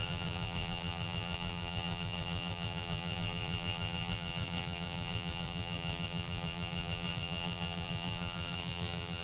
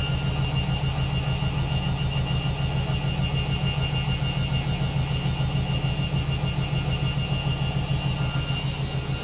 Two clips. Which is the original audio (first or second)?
second